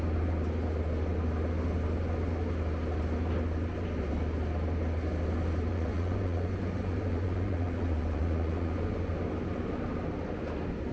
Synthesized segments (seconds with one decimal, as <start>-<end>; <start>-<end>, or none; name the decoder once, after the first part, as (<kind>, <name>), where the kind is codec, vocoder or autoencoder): 5.7-9.1 (vocoder, Vocos)